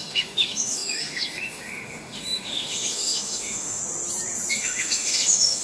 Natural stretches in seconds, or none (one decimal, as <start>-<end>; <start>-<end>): 3.8-4.5